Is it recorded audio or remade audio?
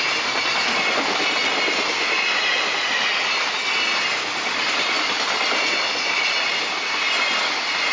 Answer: recorded